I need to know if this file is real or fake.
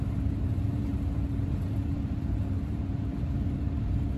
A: fake